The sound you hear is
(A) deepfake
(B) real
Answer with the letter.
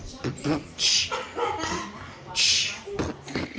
B